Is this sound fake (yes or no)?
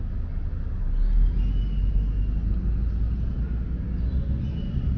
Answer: no